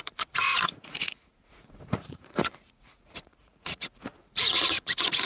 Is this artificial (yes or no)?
yes